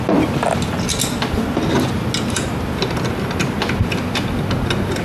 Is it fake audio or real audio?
real